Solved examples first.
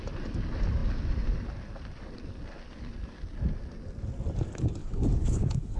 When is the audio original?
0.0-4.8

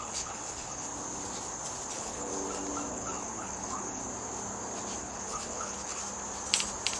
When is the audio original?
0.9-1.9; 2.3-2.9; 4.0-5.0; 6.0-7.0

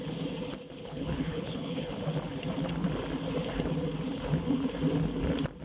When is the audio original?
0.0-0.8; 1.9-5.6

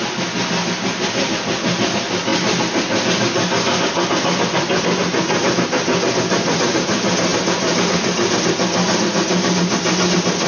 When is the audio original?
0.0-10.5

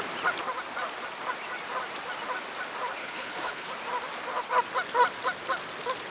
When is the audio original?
0.0-3.0; 3.7-6.1

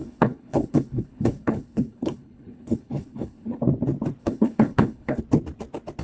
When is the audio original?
3.6-4.2; 5.2-6.0